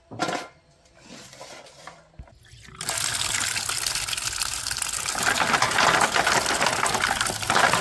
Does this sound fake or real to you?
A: real